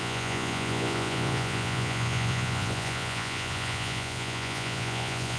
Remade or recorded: remade